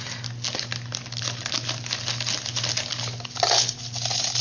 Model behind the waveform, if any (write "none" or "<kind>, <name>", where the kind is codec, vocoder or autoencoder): none